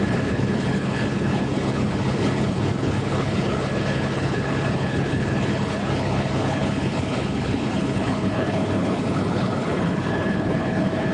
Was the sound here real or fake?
fake